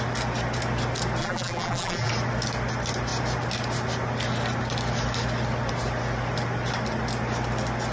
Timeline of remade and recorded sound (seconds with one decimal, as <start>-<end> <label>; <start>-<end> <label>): 0.0-1.2 recorded; 1.2-2.1 remade; 2.1-7.9 recorded